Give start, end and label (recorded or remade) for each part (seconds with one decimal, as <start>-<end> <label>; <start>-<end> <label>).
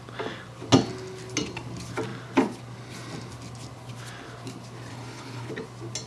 0.0-4.9 recorded; 4.9-5.5 remade; 5.5-6.1 recorded